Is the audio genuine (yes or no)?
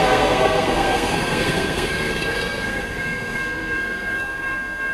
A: no